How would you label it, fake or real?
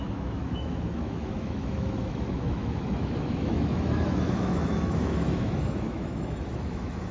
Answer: fake